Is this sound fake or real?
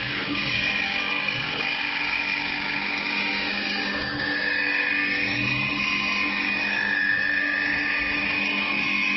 fake